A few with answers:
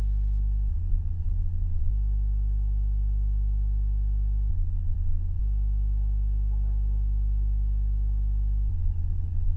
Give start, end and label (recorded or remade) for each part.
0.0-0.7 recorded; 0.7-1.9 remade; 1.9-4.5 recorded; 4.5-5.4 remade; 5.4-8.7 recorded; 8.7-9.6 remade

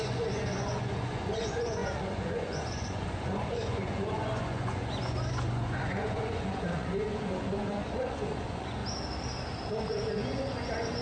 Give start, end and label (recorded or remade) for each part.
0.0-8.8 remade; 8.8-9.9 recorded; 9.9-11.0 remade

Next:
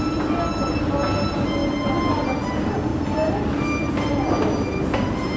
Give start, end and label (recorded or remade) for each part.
0.0-5.4 recorded